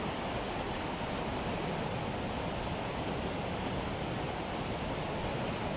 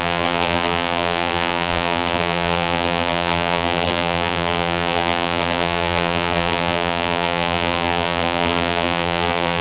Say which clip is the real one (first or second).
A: first